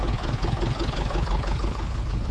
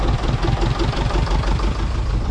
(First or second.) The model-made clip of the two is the first